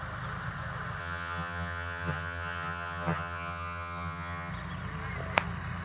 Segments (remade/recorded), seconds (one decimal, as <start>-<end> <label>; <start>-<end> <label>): 0.0-1.0 recorded; 1.0-4.5 remade; 4.5-5.8 recorded